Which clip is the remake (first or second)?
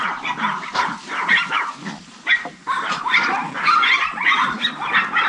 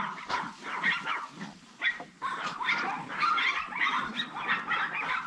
second